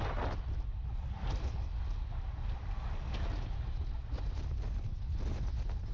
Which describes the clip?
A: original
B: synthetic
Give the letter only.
A